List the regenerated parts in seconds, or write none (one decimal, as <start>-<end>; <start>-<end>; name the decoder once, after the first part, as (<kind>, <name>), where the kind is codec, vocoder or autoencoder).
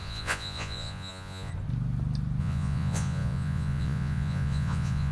0.0-1.5 (vocoder, Vocos); 2.4-5.1